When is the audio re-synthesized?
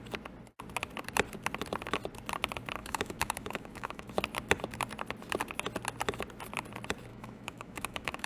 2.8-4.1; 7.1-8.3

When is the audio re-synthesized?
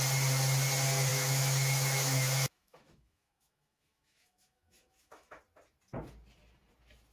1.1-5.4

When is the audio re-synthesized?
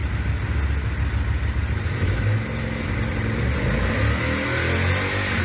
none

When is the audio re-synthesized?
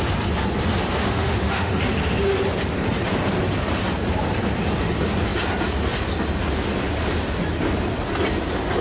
1.0-1.8